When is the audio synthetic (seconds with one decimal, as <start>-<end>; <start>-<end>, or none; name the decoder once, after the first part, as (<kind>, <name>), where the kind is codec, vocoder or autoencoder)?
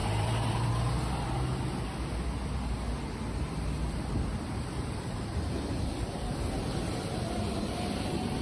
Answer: 0.0-0.7 (vocoder, BigVGAN v2)